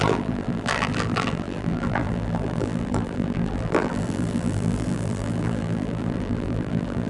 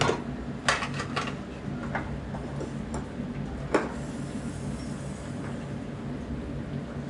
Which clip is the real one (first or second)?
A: second